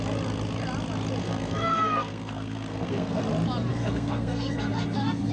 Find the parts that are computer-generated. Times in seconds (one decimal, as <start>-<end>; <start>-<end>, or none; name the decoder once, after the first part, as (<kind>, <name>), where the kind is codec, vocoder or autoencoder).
1.2-3.2 (codec, SNAC); 3.7-5.3